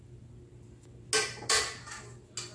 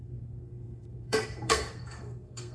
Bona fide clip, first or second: first